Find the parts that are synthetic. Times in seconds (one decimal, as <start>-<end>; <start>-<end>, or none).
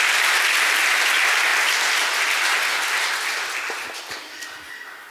none